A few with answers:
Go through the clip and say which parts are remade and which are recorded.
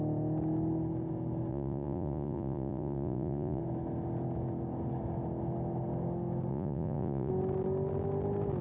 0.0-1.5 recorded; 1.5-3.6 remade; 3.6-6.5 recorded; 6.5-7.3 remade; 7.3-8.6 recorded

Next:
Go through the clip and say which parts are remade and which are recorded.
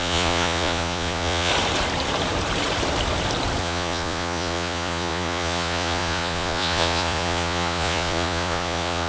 0.0-1.5 remade; 1.5-3.6 recorded; 3.6-9.1 remade